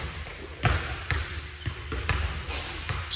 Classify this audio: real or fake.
real